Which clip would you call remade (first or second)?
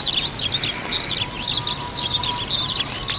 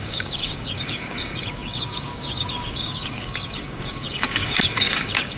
second